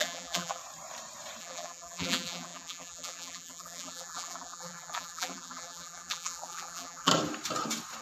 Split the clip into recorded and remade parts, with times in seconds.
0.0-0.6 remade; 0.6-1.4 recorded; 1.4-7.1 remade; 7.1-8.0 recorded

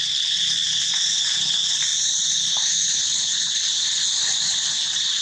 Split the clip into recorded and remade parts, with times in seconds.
0.0-5.2 recorded

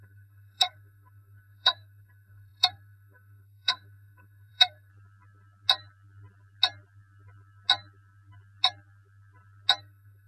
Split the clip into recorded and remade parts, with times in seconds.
0.0-4.9 remade; 4.9-9.8 recorded; 9.8-10.3 remade

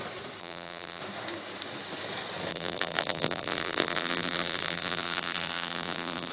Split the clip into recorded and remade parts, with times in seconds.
0.0-0.4 recorded; 0.4-1.0 remade; 1.0-2.5 recorded; 2.5-6.3 remade

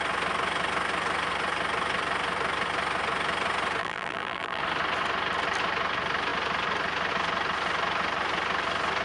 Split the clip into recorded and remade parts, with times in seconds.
0.0-3.8 recorded; 3.8-4.6 remade; 4.6-9.0 recorded

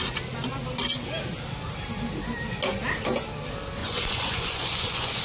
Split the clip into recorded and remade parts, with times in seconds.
0.0-3.8 recorded; 3.8-5.2 remade

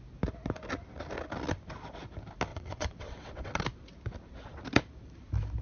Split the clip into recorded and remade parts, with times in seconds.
0.0-2.5 recorded; 2.5-3.6 remade; 3.6-5.6 recorded

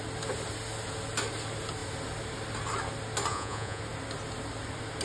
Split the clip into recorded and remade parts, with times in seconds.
0.0-3.3 recorded; 3.3-3.8 remade; 3.8-5.0 recorded